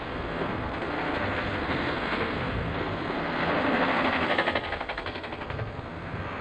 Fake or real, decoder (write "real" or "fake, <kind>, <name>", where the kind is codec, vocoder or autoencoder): fake, codec, SNAC